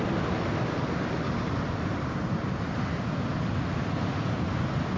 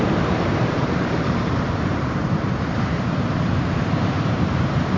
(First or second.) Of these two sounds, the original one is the first